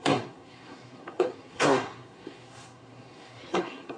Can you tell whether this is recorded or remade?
remade